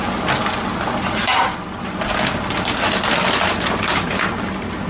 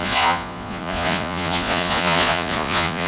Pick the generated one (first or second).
second